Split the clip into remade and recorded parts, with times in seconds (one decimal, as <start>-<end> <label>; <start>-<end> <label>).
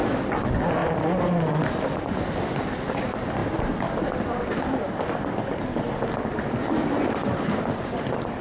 0.0-8.4 recorded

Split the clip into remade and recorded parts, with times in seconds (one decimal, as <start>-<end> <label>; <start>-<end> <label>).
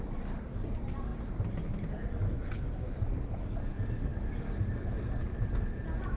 0.0-6.2 recorded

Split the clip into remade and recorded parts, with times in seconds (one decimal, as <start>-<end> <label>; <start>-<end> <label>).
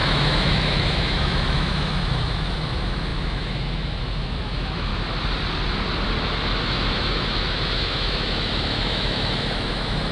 0.0-4.9 remade; 4.9-6.6 recorded; 6.6-10.1 remade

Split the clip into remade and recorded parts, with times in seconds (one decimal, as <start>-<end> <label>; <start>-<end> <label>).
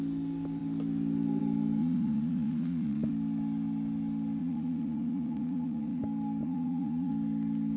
0.0-1.8 recorded; 1.8-3.1 remade; 3.1-4.4 recorded; 4.4-6.0 remade; 6.0-6.4 recorded; 6.4-7.1 remade; 7.1-7.8 recorded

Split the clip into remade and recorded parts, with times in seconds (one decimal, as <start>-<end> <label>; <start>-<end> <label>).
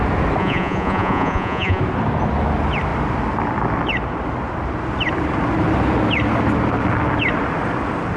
0.0-0.4 recorded; 0.4-1.8 remade; 1.8-8.2 recorded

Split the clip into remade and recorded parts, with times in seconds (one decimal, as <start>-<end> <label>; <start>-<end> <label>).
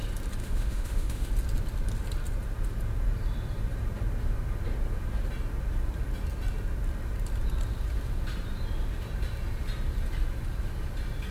0.0-0.4 recorded; 0.4-1.3 remade; 1.3-11.3 recorded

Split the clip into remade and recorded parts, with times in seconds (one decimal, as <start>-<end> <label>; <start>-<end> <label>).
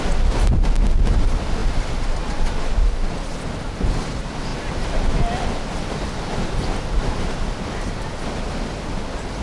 0.0-9.4 recorded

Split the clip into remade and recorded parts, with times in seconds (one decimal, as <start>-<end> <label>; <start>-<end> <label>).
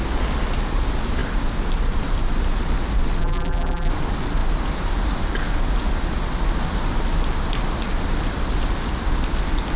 0.0-3.2 recorded; 3.2-3.9 remade; 3.9-9.8 recorded